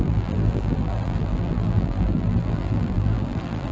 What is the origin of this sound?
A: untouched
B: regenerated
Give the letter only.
B